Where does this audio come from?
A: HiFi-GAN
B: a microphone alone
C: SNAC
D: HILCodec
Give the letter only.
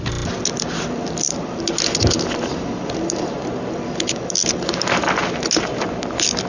B